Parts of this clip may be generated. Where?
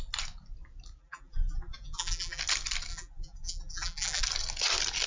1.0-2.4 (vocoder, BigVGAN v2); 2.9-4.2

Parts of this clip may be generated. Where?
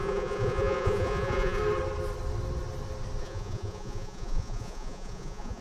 0.0-1.6 (vocoder, Vocos); 3.2-5.6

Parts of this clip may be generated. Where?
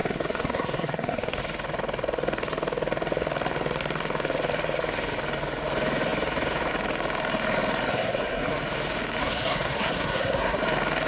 0.0-1.4 (codec, SNAC); 7.9-8.5; 9.2-10.6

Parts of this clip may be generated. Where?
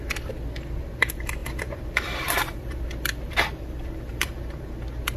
1.4-4.5 (vocoder, BigVGAN v2)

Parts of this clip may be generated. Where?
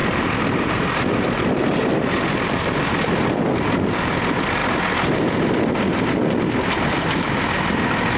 0.0-0.9 (vocoder, BigVGAN v2)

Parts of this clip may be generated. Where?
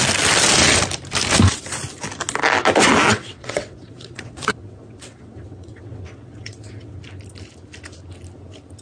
3.1-7.0 (vocoder, WaveNeXt)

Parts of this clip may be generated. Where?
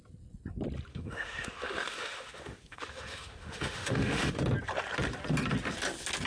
0.9-4.4 (autoencoder, DAC-VAE)